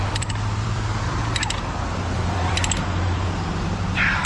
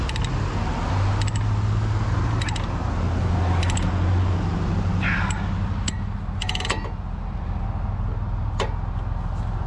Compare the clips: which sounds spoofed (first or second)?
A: first